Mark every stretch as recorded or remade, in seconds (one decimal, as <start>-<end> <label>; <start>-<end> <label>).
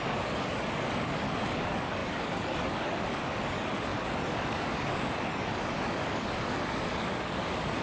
0.0-7.8 remade